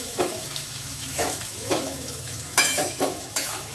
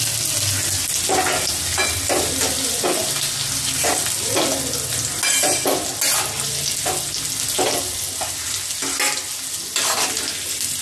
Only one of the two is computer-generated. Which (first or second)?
first